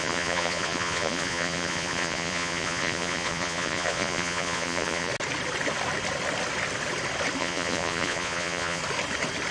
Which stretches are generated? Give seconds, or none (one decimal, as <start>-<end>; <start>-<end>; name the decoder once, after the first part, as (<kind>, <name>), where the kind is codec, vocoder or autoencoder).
0.0-5.1 (vocoder, Vocos); 7.4-8.8